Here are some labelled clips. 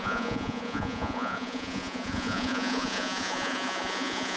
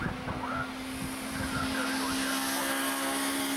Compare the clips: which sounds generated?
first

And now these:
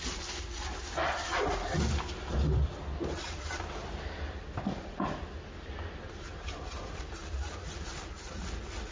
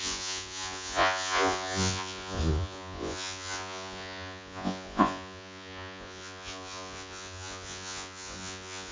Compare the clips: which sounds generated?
second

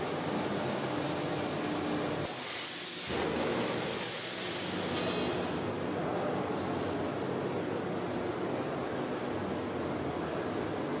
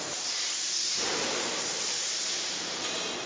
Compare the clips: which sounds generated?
second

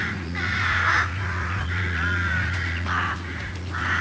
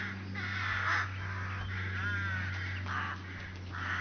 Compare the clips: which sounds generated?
first